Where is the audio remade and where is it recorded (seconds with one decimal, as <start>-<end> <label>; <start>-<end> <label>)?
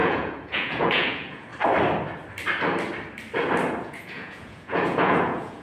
0.0-1.5 remade; 1.5-3.8 recorded; 3.8-5.6 remade